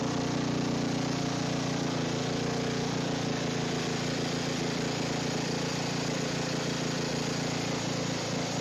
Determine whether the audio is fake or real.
real